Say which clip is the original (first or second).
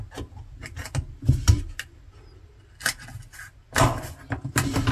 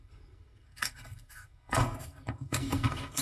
first